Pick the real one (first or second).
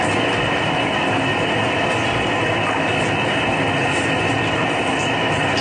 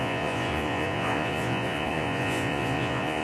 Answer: first